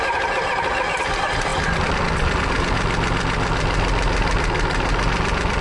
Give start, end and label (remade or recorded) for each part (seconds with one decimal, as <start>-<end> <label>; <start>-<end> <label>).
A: 0.0-5.6 recorded